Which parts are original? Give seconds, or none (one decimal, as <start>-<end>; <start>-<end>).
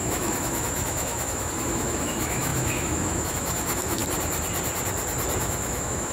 4.0-5.4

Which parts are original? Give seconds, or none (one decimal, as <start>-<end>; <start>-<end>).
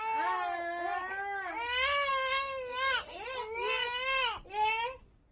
0.0-5.3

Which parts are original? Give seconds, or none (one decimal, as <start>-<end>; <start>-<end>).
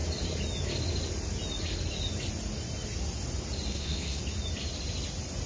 0.0-3.7; 4.2-5.5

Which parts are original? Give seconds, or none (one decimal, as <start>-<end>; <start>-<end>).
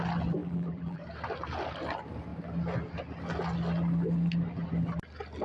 0.0-0.4; 1.0-5.4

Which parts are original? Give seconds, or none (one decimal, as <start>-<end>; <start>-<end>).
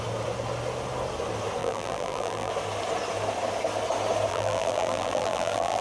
0.0-1.6; 2.5-4.3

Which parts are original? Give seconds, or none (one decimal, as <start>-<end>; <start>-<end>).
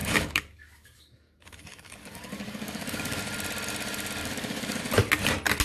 3.2-4.2; 4.8-5.6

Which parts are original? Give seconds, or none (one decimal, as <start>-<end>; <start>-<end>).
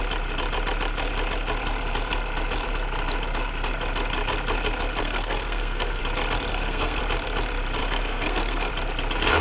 0.0-5.0; 6.0-6.5; 7.0-7.8; 8.7-9.4